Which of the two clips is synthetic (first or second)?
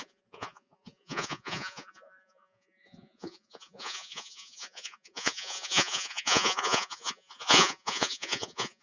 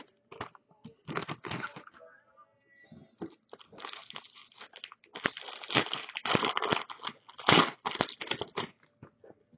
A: first